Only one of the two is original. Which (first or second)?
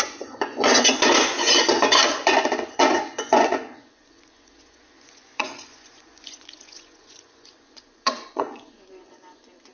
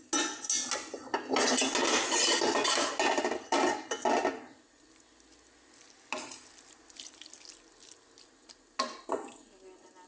second